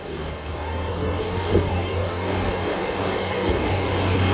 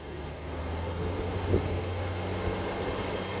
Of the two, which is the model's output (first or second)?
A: first